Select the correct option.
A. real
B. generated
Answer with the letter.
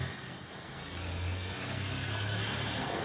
B